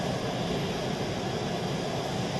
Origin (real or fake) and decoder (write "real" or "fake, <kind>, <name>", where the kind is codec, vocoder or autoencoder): real